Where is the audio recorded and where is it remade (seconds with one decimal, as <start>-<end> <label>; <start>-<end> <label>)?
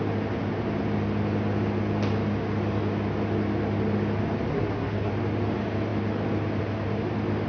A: 0.0-4.5 recorded; 4.5-5.1 remade; 5.1-7.5 recorded